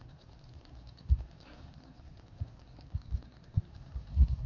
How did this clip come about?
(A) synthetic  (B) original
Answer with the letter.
A